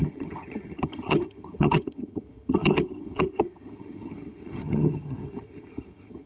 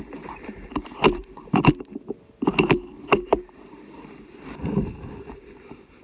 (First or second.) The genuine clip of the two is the second